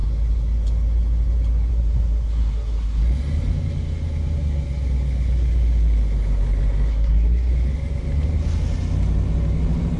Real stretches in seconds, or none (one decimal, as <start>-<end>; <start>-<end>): 0.0-1.7; 3.0-6.9; 7.5-10.0